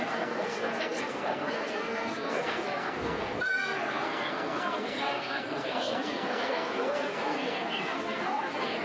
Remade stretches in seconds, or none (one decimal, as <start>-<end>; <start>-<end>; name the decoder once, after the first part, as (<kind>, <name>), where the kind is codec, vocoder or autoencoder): 0.0-8.8 (codec, SNAC)